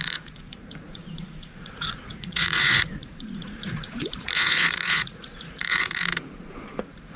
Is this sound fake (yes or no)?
yes